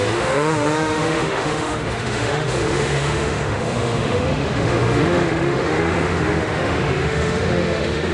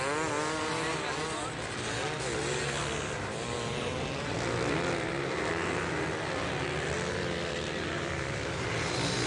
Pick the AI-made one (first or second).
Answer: first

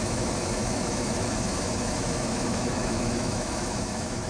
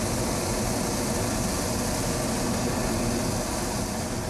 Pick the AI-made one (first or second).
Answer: first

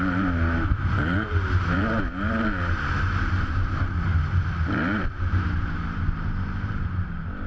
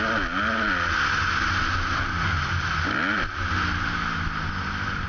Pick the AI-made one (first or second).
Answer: first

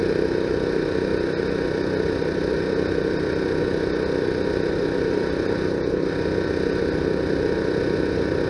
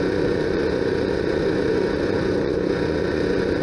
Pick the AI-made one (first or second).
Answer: second